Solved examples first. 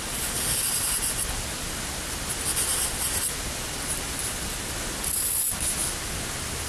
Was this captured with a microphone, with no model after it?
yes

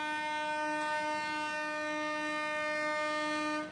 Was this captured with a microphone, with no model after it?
yes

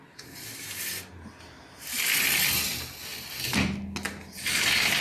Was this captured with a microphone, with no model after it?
yes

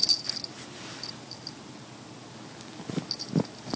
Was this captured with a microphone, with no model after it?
yes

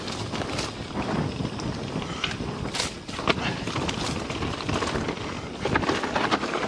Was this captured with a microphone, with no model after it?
yes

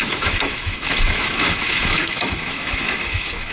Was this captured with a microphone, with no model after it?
no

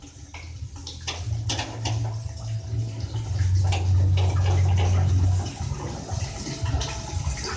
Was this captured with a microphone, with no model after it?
yes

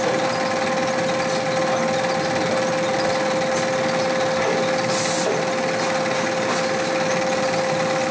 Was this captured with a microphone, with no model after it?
yes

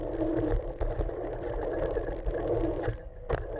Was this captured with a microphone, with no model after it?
yes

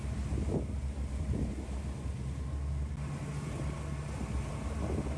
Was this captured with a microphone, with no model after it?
yes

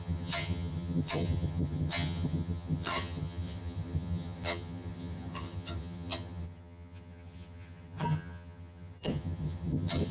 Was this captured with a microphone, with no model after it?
no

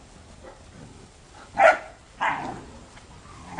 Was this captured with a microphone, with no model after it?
yes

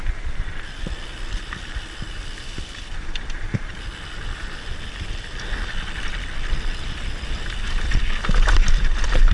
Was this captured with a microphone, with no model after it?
no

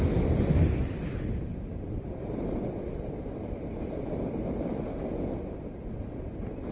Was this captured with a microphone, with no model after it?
yes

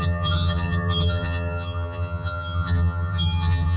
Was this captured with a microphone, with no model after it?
no